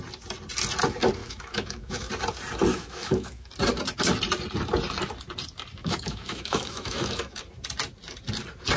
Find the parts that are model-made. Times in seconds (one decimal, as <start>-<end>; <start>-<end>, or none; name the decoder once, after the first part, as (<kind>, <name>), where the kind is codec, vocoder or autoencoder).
1.2-2.1 (autoencoder, DAC-VAE); 2.7-3.5; 5.8-7.4